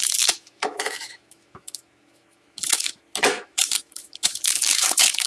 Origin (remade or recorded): remade